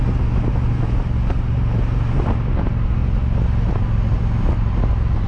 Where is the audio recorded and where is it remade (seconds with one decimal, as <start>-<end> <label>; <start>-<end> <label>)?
0.0-5.3 recorded